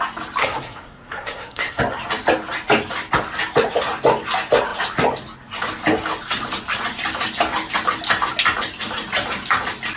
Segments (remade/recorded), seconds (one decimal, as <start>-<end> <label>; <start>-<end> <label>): 0.0-0.4 recorded; 0.4-1.8 remade; 1.8-10.0 recorded